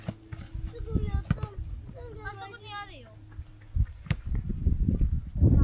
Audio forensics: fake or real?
real